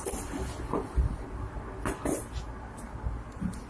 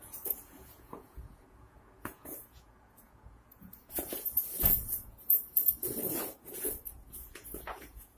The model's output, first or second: second